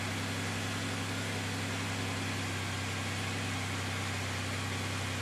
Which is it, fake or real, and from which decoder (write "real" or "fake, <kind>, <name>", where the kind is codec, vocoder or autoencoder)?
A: real